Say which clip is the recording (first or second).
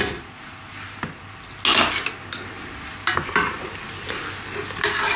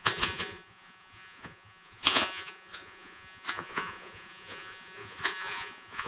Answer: first